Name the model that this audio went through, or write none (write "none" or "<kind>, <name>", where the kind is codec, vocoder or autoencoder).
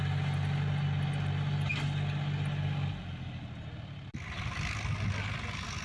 none